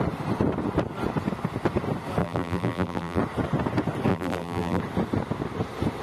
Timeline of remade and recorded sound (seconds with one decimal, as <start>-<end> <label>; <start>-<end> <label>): 0.0-2.2 recorded; 2.2-3.2 remade; 3.2-4.1 recorded; 4.1-4.8 remade; 4.8-6.0 recorded